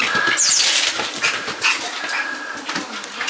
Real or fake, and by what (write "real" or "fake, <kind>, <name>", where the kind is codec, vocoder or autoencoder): real